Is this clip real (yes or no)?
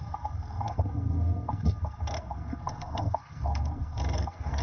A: no